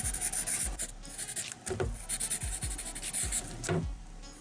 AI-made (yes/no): no